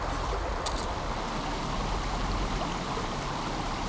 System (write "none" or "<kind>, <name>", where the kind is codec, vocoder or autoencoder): none